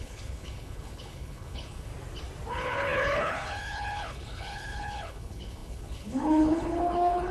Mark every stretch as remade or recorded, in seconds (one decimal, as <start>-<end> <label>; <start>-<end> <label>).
0.0-1.9 remade; 1.9-2.5 recorded; 2.5-7.3 remade